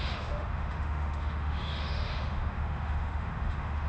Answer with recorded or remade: remade